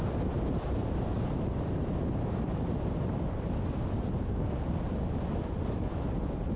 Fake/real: real